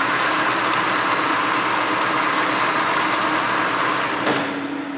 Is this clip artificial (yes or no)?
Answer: no